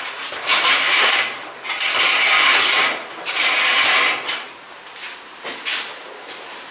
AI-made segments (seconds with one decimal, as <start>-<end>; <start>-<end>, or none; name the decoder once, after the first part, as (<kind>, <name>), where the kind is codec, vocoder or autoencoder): 0.5-1.5 (vocoder, BigVGAN v2); 2.5-4.8